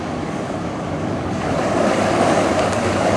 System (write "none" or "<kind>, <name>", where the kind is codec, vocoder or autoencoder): codec, DAC